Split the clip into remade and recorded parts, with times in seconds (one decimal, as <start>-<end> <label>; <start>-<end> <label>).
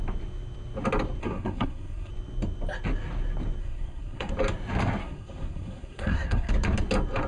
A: 0.0-1.2 recorded; 1.2-2.1 remade; 2.1-3.6 recorded; 3.6-4.3 remade; 4.3-5.0 recorded; 5.0-6.5 remade; 6.5-7.3 recorded